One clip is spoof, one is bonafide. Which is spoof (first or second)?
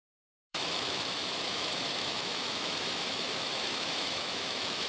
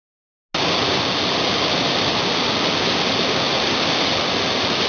first